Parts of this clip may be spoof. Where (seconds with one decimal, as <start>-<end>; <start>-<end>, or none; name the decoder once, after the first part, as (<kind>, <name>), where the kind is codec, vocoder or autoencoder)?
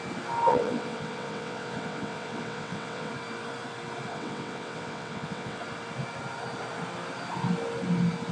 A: 0.5-3.1 (vocoder, WaveNeXt); 4.1-5.6